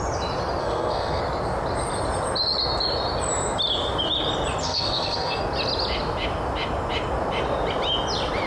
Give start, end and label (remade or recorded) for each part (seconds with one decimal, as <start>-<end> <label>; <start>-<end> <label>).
0.0-0.6 recorded; 0.6-1.2 remade; 1.2-4.6 recorded; 4.6-5.4 remade; 5.4-8.5 recorded